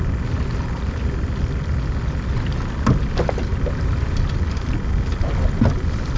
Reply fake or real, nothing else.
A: real